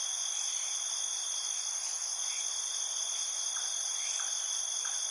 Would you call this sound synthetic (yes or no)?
no